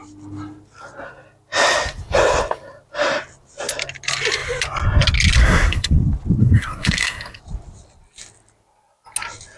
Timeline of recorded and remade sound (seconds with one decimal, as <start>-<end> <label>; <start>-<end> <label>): 0.0-5.4 recorded; 5.4-6.0 remade; 6.0-6.4 recorded; 6.4-7.4 remade; 7.4-9.6 recorded